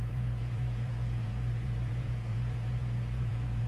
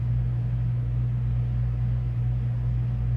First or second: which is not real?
first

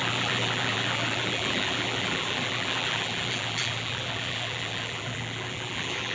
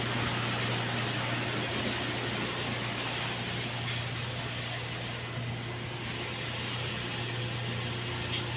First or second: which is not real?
first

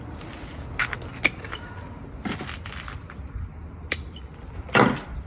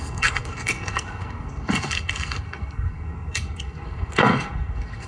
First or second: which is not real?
second